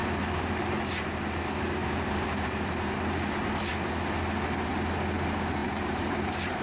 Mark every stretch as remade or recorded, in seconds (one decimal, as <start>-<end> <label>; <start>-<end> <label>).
0.0-1.8 recorded; 1.8-3.1 remade; 3.1-5.6 recorded; 5.6-6.6 remade